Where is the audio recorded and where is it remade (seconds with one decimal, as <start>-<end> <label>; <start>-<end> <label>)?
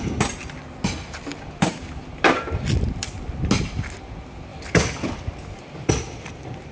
0.0-1.3 recorded; 1.3-2.3 remade; 2.3-4.5 recorded; 4.5-5.9 remade; 5.9-6.7 recorded